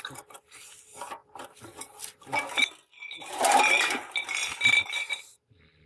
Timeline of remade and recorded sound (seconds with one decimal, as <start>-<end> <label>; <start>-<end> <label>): 0.0-5.9 recorded

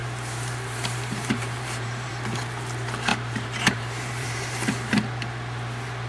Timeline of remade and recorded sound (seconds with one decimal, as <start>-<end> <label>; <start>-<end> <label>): 0.0-2.1 remade; 2.1-3.1 recorded; 3.1-4.9 remade; 4.9-6.1 recorded

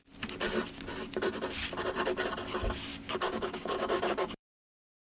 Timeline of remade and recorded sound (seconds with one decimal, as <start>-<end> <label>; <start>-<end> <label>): 0.0-2.9 recorded; 2.9-4.5 remade; 4.5-5.2 recorded

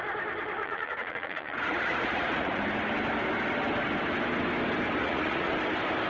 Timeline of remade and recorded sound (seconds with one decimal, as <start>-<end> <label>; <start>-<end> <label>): 0.0-0.6 recorded; 0.6-2.6 remade; 2.6-5.0 recorded; 5.0-5.5 remade; 5.5-6.1 recorded

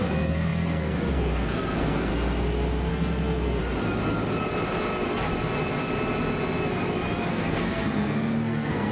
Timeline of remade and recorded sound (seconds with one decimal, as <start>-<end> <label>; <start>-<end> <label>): 0.0-2.1 remade; 2.1-2.9 recorded; 2.9-3.6 remade; 3.6-7.3 recorded; 7.3-8.9 remade

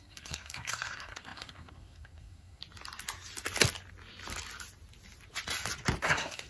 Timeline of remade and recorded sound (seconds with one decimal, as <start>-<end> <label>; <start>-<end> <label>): 0.0-2.6 remade; 2.6-6.0 recorded; 6.0-6.5 remade

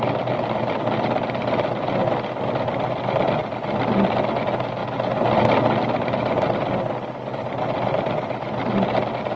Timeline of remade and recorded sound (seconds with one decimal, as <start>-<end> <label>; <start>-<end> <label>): 0.0-9.4 recorded